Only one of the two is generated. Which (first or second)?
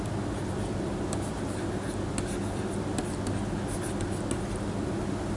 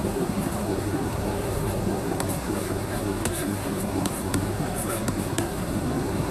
second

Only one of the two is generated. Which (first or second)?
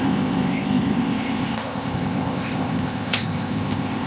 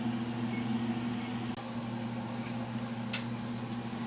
first